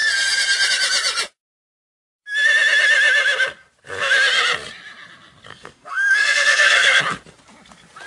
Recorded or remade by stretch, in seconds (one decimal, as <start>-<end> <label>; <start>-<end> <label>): 0.0-5.5 recorded; 5.5-7.0 remade; 7.0-8.1 recorded